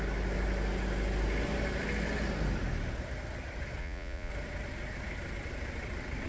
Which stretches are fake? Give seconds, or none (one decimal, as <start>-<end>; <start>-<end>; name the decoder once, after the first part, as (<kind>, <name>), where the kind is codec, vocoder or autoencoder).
3.8-4.3 (vocoder, Vocos)